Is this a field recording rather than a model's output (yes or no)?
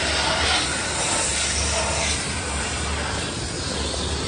yes